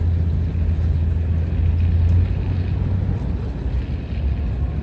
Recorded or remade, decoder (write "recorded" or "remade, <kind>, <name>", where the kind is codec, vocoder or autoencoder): recorded